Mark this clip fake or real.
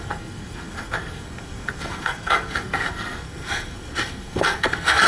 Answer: fake